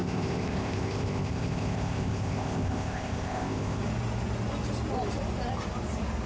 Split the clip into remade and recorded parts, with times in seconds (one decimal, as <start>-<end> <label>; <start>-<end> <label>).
0.0-3.8 remade; 3.8-6.3 recorded